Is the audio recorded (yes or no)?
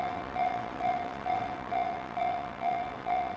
no